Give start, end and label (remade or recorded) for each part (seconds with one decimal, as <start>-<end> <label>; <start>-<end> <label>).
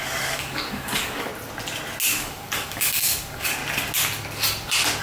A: 0.0-1.3 remade; 1.3-2.1 recorded; 2.1-3.6 remade; 3.6-5.0 recorded